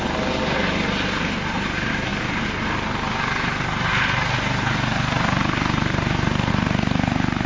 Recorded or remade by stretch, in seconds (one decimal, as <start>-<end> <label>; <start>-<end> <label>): 0.0-7.5 recorded